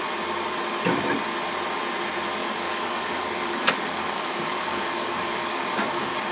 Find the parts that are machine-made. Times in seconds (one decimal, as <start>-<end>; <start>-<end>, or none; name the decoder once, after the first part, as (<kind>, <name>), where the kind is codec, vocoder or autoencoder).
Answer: 2.4-6.3 (codec, DAC)